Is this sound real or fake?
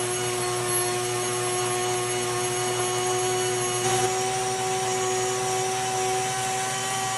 real